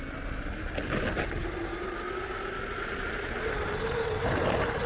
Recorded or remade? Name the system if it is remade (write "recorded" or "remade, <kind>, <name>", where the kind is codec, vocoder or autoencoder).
recorded